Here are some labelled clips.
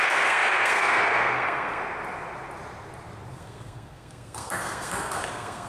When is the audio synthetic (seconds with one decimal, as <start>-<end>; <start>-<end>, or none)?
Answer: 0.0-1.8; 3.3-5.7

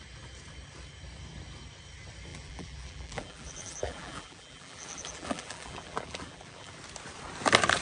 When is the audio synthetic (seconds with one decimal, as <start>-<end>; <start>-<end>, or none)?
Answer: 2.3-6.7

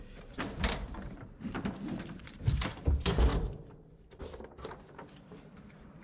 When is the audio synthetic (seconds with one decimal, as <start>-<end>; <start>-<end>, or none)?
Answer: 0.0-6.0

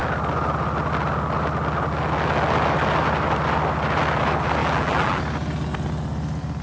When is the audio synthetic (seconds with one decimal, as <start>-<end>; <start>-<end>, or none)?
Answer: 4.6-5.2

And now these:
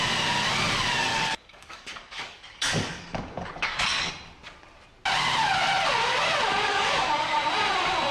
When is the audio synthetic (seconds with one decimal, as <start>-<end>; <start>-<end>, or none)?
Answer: 1.1-4.1; 6.7-7.3